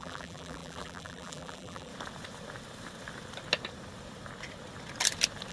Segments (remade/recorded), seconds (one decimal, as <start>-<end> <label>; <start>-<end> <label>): 0.0-1.9 remade; 1.9-5.5 recorded